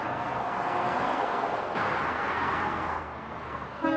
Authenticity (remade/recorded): remade